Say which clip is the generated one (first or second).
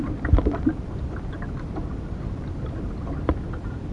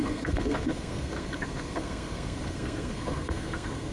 second